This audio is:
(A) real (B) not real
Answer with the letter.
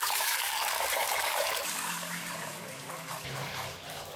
B